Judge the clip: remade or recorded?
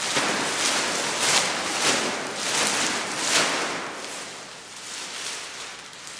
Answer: recorded